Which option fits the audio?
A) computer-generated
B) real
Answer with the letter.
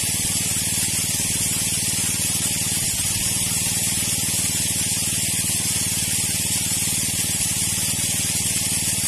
B